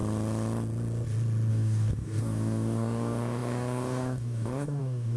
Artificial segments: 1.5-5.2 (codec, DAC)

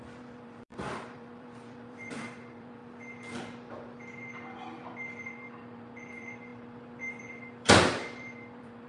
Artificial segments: 0.0-2.8 (vocoder, BigVGAN v2); 4.8-8.9

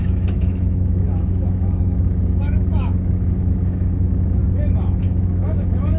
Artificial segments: 0.0-4.4 (autoencoder, DAC-VAE); 5.0-6.0

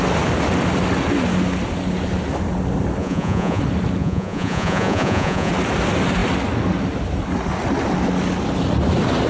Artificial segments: 3.0-3.6 (vocoder, Vocos); 4.0-5.5

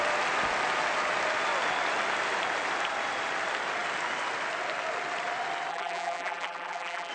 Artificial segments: 5.7-7.1 (vocoder, BigVGAN v2)

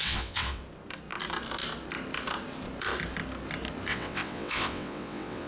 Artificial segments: 0.0-0.6 (vocoder, WaveNeXt); 3.9-5.5